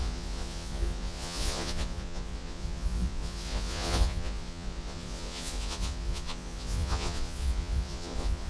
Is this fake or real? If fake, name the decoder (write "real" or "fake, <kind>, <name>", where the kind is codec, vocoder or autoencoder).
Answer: fake, vocoder, Vocos